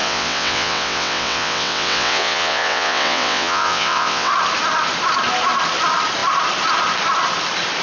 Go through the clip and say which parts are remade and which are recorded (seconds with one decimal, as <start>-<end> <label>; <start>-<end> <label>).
0.0-4.3 remade; 4.3-7.8 recorded